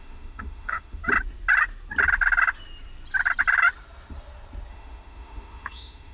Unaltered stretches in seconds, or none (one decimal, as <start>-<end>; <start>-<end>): 1.0-4.7